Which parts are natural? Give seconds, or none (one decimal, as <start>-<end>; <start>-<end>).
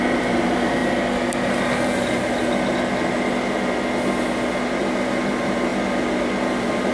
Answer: 0.8-4.9; 5.7-6.4